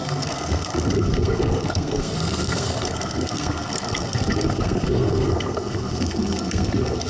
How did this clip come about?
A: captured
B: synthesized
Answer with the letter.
B